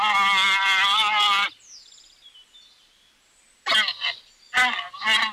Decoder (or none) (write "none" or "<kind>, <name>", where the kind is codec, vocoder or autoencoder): none